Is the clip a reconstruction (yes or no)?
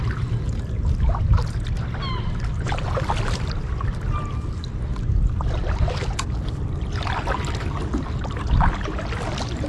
no